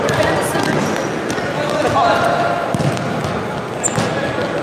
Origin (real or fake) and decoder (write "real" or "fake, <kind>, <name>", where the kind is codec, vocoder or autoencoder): real